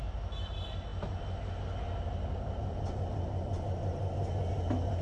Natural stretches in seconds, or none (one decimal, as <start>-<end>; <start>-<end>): 0.0-5.0